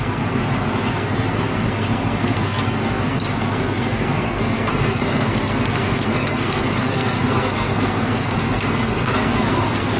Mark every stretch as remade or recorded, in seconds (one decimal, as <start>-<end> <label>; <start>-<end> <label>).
0.0-0.4 remade; 0.4-0.9 recorded; 0.9-10.0 remade